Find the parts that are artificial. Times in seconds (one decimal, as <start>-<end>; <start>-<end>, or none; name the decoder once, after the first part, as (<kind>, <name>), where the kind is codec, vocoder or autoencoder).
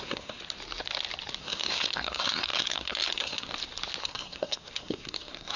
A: 0.0-0.4 (codec, SNAC); 1.4-3.5; 4.0-5.6